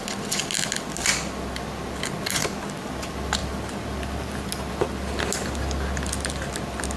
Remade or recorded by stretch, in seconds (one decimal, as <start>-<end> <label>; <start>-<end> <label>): 0.0-7.0 recorded